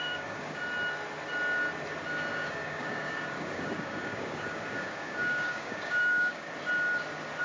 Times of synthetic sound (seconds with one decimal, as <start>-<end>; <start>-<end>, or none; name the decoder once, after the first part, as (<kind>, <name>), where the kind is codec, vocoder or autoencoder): 0.0-0.6 (codec, DAC); 2.3-6.5